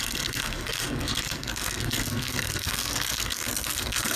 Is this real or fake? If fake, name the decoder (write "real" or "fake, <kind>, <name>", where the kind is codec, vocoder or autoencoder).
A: fake, codec, SNAC